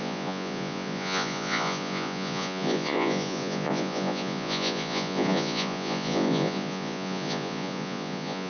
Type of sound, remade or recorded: remade